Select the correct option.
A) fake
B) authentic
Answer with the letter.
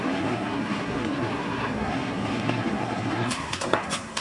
A